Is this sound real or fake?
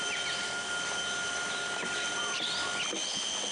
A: real